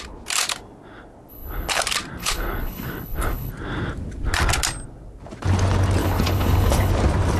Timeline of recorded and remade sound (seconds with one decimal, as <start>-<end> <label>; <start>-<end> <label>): 0.0-1.3 recorded; 1.3-1.8 remade; 1.8-2.2 recorded; 2.2-3.5 remade; 3.5-6.0 recorded; 6.0-6.9 remade; 6.9-7.4 recorded